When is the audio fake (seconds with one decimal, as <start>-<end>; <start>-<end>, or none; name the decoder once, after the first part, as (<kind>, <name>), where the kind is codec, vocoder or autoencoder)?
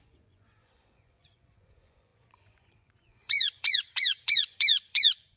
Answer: 0.0-5.4 (vocoder, Vocos)